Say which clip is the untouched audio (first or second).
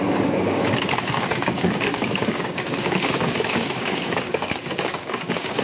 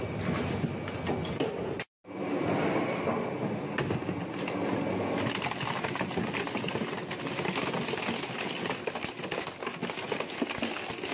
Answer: second